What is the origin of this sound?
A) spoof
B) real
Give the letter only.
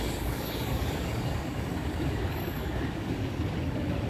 A